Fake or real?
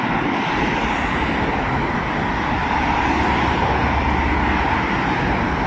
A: real